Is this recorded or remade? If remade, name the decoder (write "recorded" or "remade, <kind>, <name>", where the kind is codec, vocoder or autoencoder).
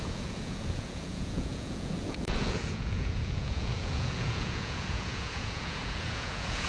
remade, vocoder, Vocos